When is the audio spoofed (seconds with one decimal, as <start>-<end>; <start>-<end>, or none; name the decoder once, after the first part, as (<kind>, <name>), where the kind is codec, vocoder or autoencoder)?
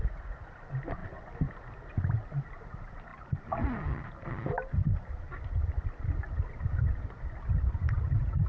none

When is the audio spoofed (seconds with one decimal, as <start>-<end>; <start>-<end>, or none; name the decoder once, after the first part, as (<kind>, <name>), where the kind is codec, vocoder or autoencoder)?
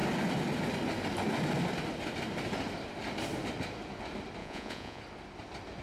4.4-5.0 (vocoder, Vocos)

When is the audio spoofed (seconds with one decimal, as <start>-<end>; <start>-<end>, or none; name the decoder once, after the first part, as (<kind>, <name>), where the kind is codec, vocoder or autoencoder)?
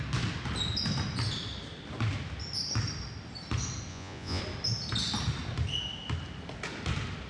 3.9-4.4 (vocoder, Vocos)